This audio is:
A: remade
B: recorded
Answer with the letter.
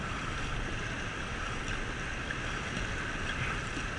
B